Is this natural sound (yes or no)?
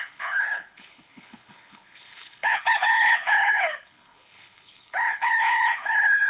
no